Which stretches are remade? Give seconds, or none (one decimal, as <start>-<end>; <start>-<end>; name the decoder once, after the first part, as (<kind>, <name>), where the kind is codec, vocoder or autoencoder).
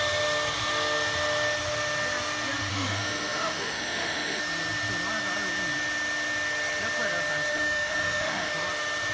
2.7-4.4 (autoencoder, DAC-VAE); 7.5-8.5